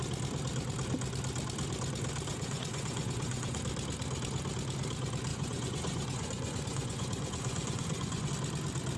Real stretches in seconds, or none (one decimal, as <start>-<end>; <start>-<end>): 0.0-2.3; 3.6-5.3; 8.3-9.0